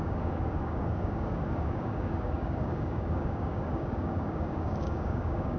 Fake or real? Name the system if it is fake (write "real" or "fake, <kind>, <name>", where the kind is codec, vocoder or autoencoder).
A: fake, codec, DAC